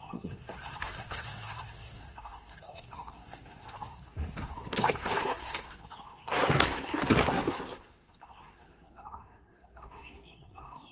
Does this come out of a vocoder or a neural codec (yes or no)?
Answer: yes